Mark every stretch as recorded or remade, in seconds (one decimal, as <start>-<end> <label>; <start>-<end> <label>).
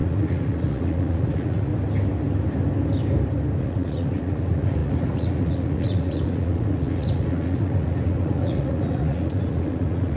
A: 0.0-1.7 remade; 1.7-3.6 recorded; 3.6-10.2 remade